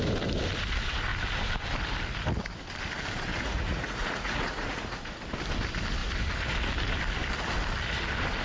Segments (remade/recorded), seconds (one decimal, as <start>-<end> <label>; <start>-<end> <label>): 0.0-3.3 recorded; 3.3-5.2 remade; 5.2-8.4 recorded